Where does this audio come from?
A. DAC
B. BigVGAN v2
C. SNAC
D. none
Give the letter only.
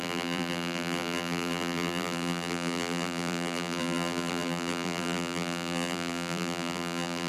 B